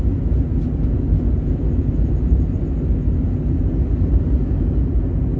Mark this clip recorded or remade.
recorded